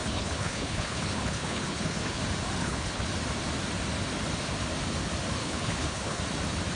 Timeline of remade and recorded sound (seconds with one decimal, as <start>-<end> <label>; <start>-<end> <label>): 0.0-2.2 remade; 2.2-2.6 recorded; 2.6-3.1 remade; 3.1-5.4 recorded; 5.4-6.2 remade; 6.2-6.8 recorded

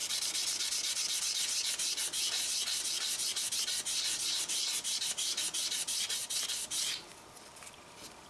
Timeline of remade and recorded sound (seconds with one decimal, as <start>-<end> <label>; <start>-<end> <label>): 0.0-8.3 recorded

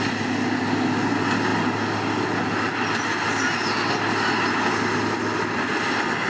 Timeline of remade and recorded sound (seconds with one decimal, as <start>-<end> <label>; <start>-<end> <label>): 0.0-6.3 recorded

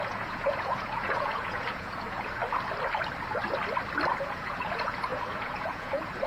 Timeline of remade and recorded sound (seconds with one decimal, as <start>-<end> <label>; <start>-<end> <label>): 0.0-2.4 remade; 2.4-4.1 recorded; 4.1-6.3 remade

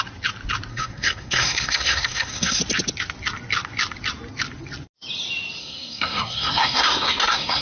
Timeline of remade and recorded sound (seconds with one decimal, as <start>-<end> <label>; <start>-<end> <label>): 0.0-0.7 recorded; 0.7-2.6 remade; 2.6-5.6 recorded; 5.6-7.6 remade

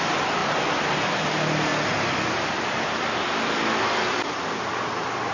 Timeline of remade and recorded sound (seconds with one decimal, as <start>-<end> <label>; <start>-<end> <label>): 0.0-5.3 recorded

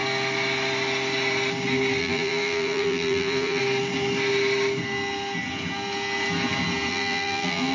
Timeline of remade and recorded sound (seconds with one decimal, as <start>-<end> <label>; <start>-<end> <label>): 0.0-2.0 recorded; 2.0-3.6 remade; 3.6-6.9 recorded; 6.9-7.7 remade